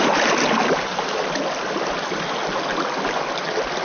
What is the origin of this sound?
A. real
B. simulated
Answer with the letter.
A